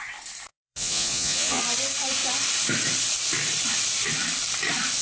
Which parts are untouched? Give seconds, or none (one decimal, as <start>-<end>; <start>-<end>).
0.0-0.5; 1.6-5.0